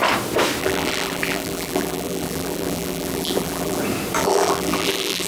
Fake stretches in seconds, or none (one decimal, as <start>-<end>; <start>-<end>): 0.6-3.8; 4.2-5.3